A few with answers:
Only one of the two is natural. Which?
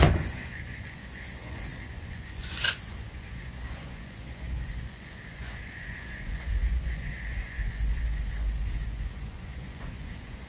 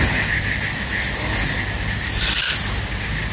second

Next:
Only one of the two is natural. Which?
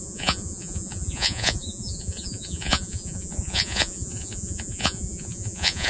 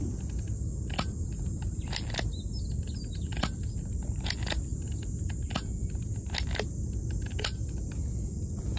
second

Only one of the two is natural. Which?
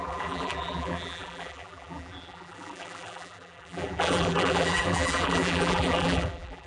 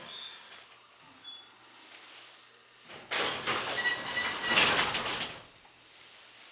second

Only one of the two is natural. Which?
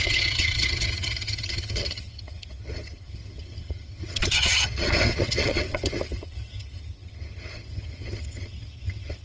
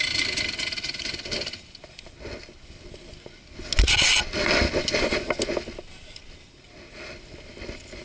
second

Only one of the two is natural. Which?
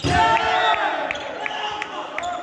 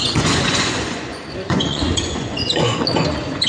first